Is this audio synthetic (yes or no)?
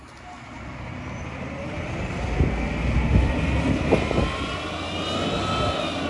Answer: no